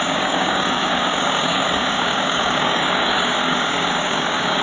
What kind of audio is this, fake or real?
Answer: fake